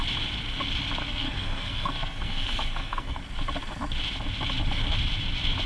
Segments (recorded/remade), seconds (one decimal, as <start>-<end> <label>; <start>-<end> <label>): 0.0-1.0 recorded; 1.0-3.2 remade; 3.2-5.7 recorded